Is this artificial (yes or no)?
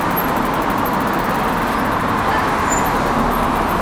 no